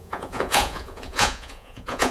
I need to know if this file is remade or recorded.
remade